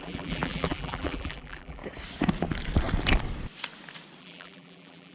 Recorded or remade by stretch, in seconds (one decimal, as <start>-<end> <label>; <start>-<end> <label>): 0.0-1.8 remade; 1.8-4.2 recorded; 4.2-5.1 remade